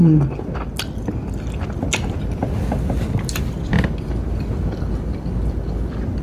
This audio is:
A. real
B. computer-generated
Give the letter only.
A